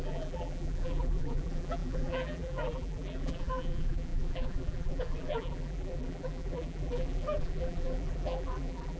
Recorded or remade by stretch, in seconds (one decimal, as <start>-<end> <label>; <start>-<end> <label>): 0.0-9.0 remade